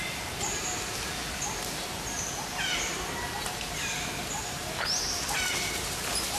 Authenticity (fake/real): real